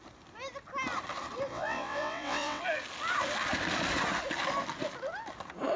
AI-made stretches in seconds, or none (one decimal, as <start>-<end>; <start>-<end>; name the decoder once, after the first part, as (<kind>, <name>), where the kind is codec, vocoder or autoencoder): 1.5-2.6 (vocoder, WaveNeXt)